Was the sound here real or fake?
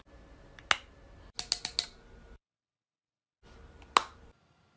real